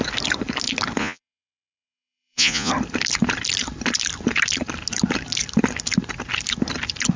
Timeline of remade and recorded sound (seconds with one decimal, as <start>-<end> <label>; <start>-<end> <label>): 0.0-1.0 recorded; 1.0-2.7 remade; 2.7-7.2 recorded